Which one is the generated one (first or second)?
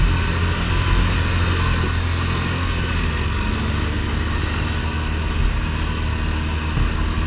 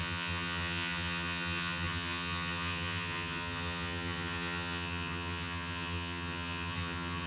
second